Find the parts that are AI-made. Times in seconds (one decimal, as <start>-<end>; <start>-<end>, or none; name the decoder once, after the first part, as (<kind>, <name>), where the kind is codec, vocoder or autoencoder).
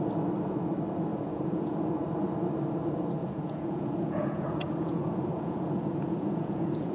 1.1-1.9 (vocoder, Vocos); 3.2-6.9